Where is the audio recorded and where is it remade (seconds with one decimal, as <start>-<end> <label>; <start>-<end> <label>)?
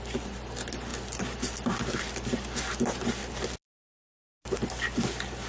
0.0-5.5 recorded